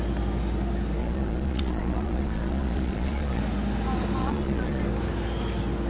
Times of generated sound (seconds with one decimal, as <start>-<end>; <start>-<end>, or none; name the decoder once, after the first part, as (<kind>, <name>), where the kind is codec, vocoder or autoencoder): 1.0-3.4 (vocoder, Vocos); 4.2-4.8